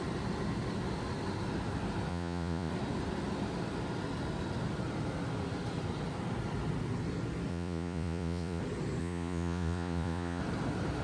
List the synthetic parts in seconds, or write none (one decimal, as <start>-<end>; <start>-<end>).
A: 2.1-2.7; 7.5-8.6; 9.0-10.4